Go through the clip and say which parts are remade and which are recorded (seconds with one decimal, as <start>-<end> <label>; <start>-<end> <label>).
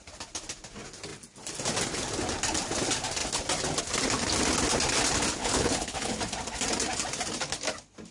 0.0-5.4 recorded; 5.4-6.2 remade; 6.2-8.1 recorded